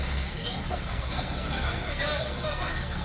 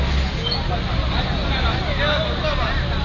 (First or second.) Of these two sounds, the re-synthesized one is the first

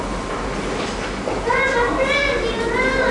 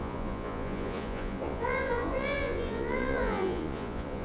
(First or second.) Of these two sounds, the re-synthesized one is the second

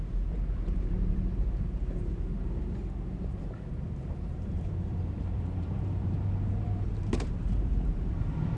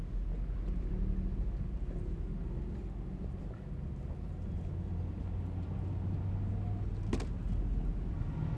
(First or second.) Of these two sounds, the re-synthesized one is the first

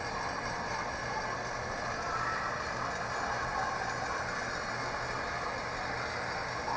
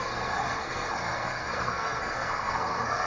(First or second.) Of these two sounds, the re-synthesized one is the second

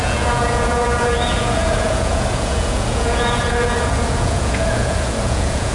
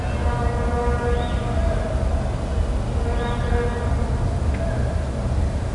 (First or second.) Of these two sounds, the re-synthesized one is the first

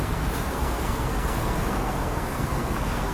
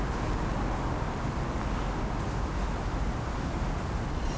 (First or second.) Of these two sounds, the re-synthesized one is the first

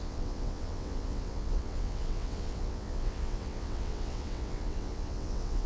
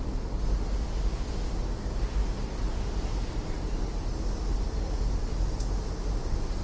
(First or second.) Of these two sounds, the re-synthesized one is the first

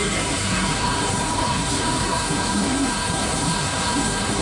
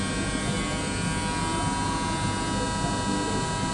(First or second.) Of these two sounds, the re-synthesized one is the first